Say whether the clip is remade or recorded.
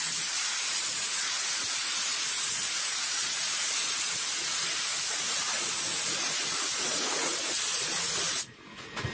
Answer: remade